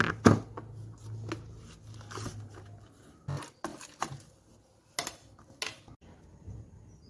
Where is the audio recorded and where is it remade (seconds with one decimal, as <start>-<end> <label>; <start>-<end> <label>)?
0.0-7.1 recorded